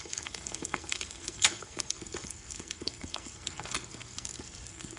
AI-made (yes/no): yes